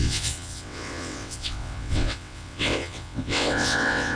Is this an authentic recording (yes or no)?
no